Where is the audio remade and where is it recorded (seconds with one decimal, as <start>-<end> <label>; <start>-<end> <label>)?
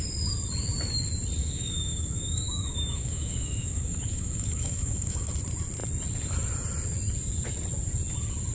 0.0-1.4 recorded; 1.4-5.3 remade; 5.3-8.5 recorded